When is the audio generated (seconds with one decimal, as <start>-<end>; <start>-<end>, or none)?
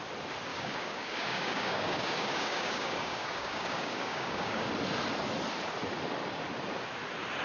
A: 0.5-4.7